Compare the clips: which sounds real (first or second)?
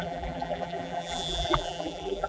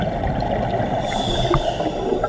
second